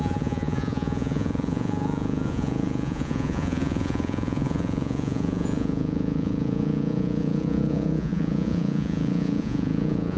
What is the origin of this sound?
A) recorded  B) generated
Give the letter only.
B